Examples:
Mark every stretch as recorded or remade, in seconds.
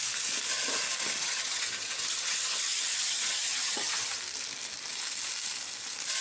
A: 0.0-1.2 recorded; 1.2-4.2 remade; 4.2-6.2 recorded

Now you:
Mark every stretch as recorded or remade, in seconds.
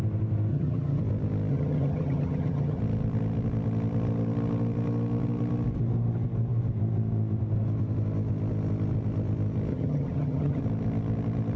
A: 0.0-0.5 recorded; 0.5-1.0 remade; 1.0-1.5 recorded; 1.5-2.8 remade; 2.8-9.7 recorded; 9.7-10.6 remade; 10.6-11.6 recorded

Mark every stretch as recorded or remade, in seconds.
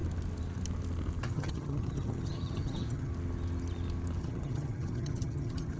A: 0.0-1.2 recorded; 1.2-3.1 remade; 3.1-4.2 recorded; 4.2-5.8 remade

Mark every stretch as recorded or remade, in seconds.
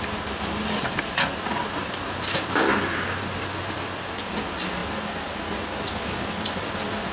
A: 0.0-7.1 recorded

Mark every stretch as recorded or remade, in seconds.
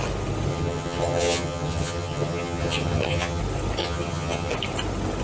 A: 0.0-0.5 recorded; 0.5-3.4 remade; 3.4-3.8 recorded; 3.8-4.5 remade; 4.5-5.2 recorded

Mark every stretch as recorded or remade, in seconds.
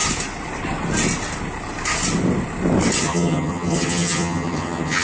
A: 0.0-3.0 recorded; 3.0-5.0 remade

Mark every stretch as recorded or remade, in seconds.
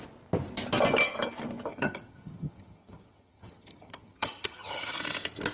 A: 0.0-1.7 recorded; 1.7-5.0 remade; 5.0-5.5 recorded